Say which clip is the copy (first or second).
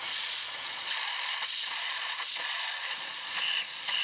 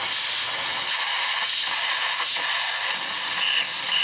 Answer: first